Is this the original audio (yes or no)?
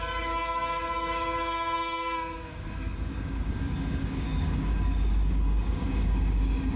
no